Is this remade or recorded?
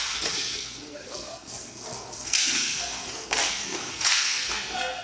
remade